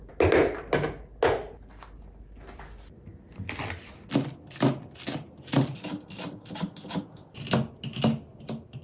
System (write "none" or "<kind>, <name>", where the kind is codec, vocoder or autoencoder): none